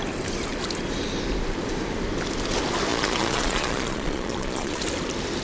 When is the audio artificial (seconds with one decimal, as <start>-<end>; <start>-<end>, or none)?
2.9-4.8

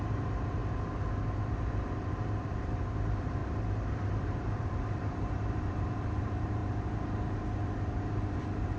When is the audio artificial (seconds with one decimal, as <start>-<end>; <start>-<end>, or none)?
0.0-0.6; 1.5-6.6; 8.4-8.8

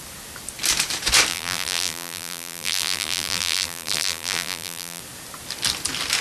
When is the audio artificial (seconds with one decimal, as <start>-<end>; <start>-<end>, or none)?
1.3-5.0

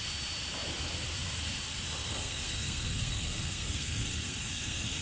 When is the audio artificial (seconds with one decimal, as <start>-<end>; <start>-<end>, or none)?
2.0-5.0

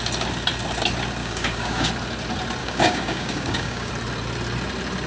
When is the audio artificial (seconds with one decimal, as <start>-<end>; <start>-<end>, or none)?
1.2-1.9; 2.6-3.9

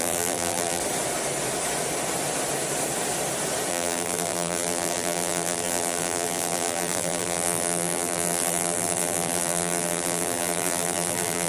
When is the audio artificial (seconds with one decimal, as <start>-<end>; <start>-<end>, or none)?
0.0-0.8; 3.7-11.5

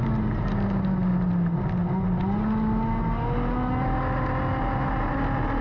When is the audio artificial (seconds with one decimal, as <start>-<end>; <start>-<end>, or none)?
none

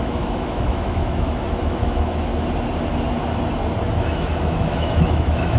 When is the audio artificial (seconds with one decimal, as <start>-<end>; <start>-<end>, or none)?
0.0-2.3; 3.8-5.6